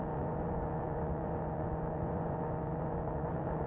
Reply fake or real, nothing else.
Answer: fake